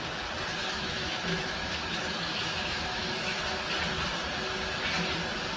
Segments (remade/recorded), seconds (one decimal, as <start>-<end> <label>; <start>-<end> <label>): 0.0-0.6 recorded; 0.6-3.4 remade; 3.4-5.6 recorded